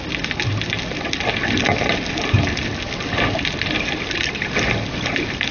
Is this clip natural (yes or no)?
yes